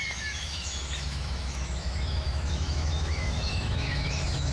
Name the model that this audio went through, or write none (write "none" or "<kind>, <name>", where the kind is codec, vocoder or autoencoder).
autoencoder, DAC-VAE